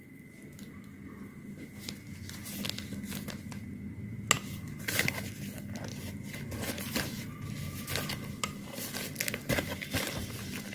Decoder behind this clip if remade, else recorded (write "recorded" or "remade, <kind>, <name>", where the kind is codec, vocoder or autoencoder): recorded